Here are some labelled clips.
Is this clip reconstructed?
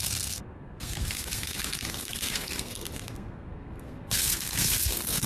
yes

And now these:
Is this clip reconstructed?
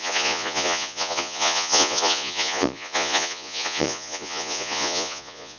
yes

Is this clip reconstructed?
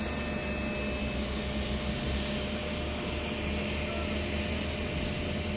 no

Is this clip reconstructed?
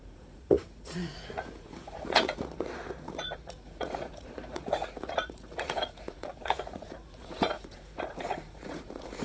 yes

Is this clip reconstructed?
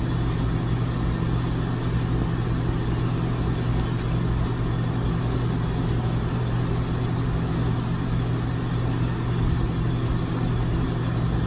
no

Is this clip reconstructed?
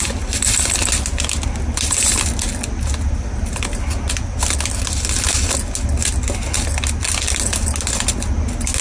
no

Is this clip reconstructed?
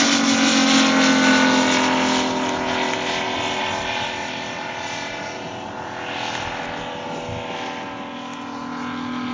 no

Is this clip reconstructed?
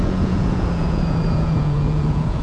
yes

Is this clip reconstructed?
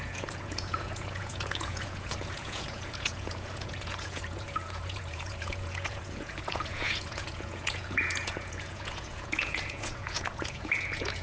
yes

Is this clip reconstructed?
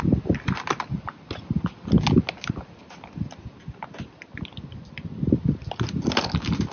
no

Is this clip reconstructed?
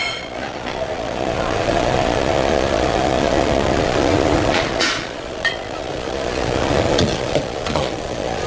yes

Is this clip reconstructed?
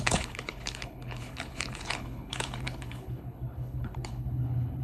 yes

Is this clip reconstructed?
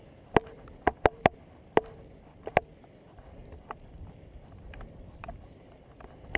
yes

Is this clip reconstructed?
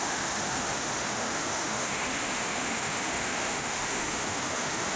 yes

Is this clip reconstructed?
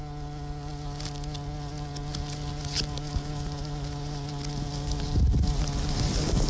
no